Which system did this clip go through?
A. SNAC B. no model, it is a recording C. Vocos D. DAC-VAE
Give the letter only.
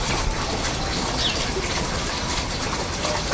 B